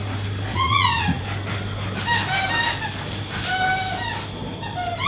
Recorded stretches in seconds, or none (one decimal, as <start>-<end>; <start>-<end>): 0.0-0.5; 1.2-5.1